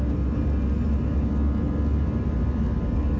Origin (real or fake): real